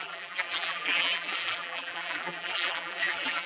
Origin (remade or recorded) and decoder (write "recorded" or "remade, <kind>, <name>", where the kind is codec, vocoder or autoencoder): remade, vocoder, BigVGAN v2